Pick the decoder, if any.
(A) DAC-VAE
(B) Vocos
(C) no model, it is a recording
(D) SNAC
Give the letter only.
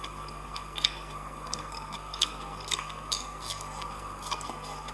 D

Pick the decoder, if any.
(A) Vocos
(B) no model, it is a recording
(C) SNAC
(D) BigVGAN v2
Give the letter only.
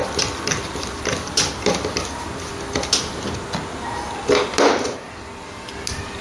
B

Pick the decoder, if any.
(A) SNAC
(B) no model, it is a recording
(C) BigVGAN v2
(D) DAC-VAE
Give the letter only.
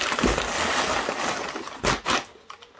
B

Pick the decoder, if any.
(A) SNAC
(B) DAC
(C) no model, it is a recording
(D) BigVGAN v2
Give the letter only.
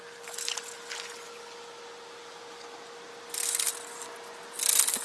C